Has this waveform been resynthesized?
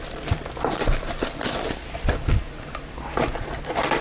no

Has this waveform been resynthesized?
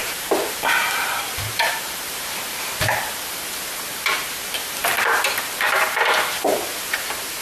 yes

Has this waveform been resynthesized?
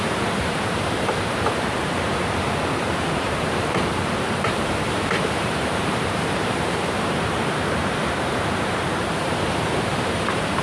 yes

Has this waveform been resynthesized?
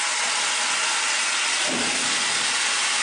no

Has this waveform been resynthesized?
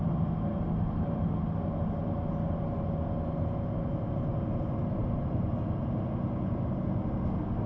no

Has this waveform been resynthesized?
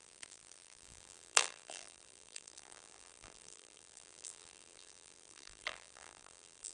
yes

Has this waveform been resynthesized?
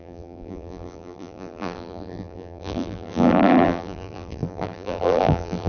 yes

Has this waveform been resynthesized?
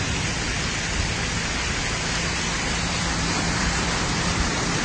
no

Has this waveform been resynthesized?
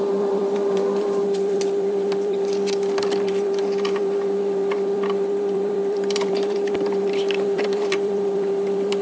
yes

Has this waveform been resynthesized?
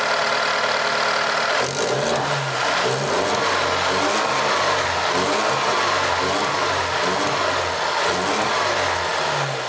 no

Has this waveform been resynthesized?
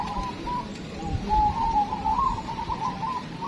yes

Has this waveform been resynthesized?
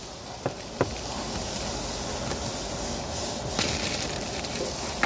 no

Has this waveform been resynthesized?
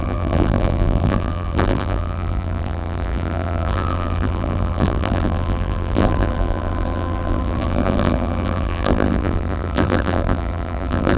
yes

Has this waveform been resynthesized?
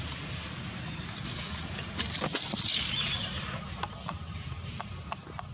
yes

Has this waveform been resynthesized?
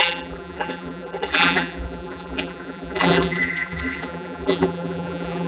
yes